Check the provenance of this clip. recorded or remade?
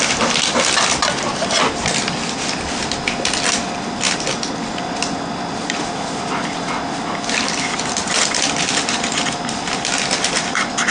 recorded